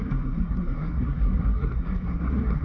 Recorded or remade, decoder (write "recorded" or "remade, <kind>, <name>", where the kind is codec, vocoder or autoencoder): remade, codec, SNAC